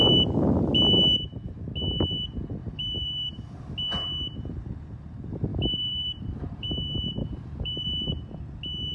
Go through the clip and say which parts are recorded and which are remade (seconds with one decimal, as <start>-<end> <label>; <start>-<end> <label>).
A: 0.0-2.6 recorded; 2.6-3.6 remade; 3.6-5.5 recorded; 5.5-6.7 remade; 6.7-7.2 recorded; 7.2-8.1 remade; 8.1-8.9 recorded